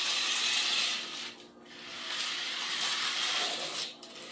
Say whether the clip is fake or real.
real